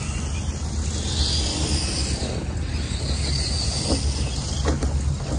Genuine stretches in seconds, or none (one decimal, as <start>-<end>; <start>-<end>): 0.0-5.4